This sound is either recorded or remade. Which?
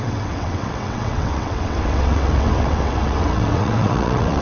remade